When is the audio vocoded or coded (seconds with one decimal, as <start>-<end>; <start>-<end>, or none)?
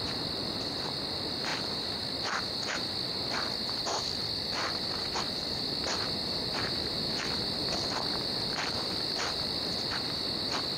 none